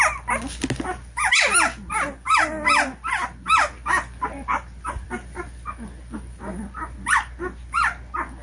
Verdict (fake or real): real